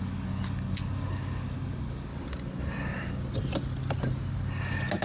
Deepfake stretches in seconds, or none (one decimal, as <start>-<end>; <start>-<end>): 0.0-2.1